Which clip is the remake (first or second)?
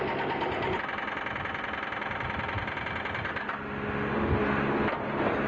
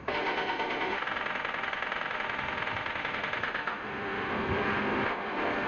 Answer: second